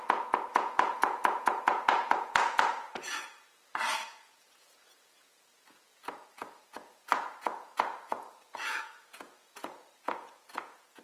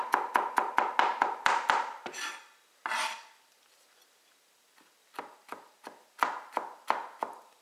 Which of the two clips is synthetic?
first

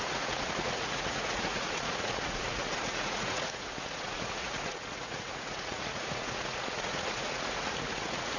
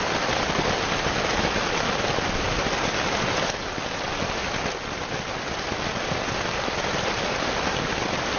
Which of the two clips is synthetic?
first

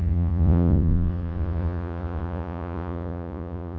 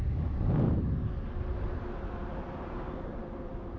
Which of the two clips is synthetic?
first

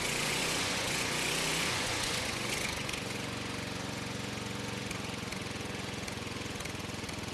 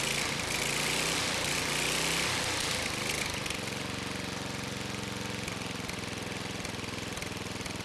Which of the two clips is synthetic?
first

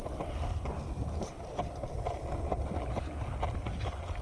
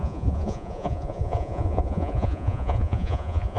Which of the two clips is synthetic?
second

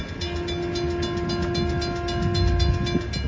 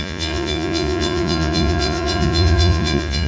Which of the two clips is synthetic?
second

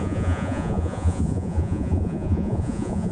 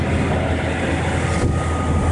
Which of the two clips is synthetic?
first